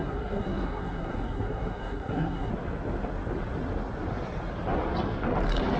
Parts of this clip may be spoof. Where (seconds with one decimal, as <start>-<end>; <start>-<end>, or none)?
0.0-2.5

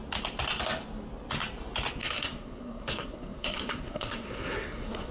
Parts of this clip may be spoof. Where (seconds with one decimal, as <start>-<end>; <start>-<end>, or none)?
2.0-5.1

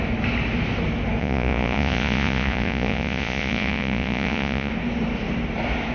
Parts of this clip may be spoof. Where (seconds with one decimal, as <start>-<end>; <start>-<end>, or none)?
1.2-4.7

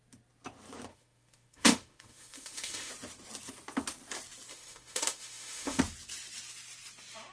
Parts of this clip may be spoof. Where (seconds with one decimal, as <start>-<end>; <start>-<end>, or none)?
0.9-2.9; 4.5-5.8

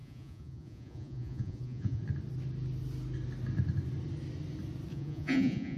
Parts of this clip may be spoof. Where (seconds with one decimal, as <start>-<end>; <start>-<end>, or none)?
0.0-2.0; 4.9-5.8

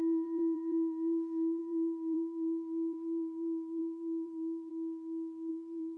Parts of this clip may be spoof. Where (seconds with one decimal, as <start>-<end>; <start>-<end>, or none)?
0.0-4.7; 5.5-6.0

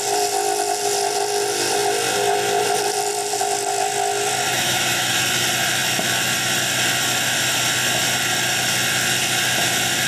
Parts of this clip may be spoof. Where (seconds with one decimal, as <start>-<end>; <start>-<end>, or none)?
4.5-5.2

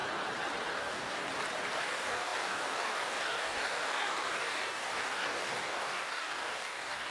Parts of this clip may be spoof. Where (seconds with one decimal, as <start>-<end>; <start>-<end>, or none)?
0.7-1.2; 1.8-7.1